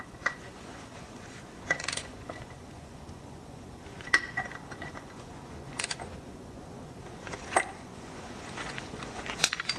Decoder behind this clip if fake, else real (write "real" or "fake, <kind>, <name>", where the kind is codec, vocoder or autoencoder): fake, vocoder, Vocos